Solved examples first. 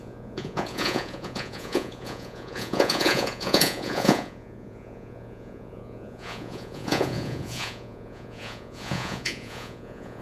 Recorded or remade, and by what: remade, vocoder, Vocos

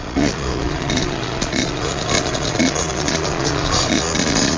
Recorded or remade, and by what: remade, vocoder, Vocos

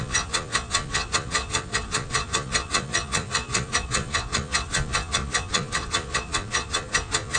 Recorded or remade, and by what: remade, vocoder, Vocos